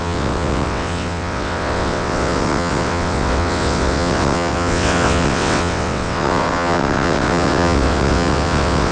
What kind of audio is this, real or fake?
fake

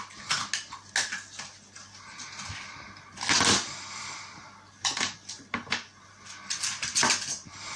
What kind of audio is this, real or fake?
real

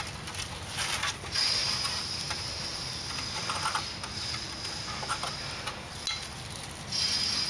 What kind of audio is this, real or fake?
real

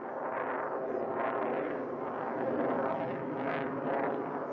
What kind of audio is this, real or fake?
real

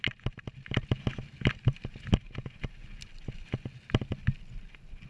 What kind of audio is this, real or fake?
real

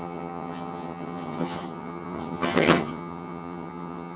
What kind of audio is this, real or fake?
fake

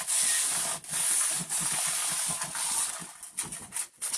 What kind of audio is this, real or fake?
real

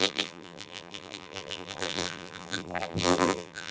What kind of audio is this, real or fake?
fake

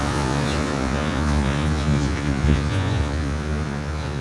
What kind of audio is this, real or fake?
fake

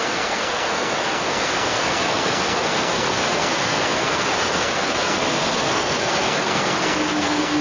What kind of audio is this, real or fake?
fake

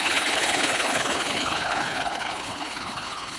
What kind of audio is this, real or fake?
fake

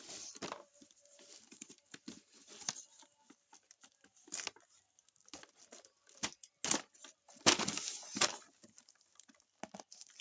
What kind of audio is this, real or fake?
real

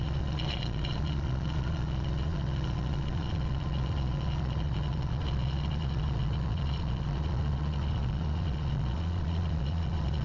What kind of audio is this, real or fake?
fake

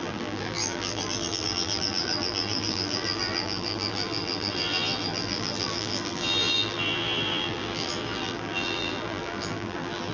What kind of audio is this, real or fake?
fake